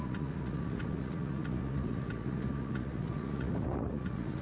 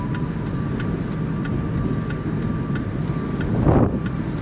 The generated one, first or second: first